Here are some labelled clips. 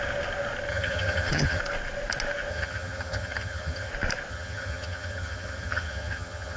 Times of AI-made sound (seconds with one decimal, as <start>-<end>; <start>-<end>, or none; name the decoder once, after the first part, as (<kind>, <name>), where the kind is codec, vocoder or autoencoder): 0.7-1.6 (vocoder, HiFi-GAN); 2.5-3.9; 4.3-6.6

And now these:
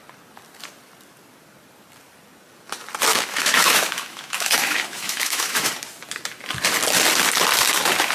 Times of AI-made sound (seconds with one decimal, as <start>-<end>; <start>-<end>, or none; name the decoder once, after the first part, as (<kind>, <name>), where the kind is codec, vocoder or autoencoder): 3.1-5.7 (autoencoder, DAC-VAE)

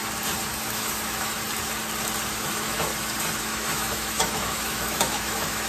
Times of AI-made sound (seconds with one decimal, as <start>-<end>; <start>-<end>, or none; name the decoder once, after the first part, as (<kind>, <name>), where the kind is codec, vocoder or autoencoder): 0.5-1.4 (autoencoder, DAC-VAE); 2.3-2.9; 3.4-5.7